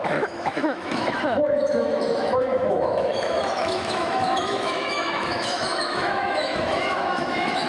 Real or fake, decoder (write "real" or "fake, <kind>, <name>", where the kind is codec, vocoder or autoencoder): fake, autoencoder, DAC-VAE